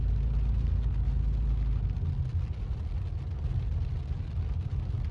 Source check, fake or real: real